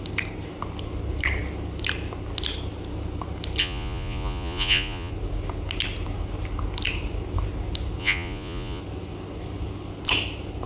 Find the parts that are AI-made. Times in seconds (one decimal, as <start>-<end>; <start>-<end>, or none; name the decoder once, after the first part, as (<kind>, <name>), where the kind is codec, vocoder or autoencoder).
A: 3.6-5.1 (vocoder, Vocos); 8.0-8.8